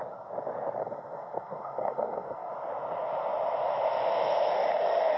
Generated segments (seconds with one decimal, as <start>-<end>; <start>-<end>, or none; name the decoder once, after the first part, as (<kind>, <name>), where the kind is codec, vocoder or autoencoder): 0.8-2.5 (codec, SNAC)